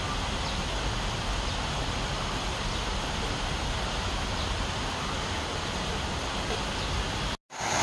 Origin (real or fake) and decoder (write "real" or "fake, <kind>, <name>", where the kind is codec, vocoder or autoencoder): real